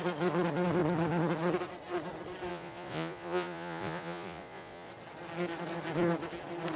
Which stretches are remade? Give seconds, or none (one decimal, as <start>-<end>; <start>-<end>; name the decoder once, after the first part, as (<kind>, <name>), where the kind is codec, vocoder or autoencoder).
2.5-4.9 (vocoder, Vocos)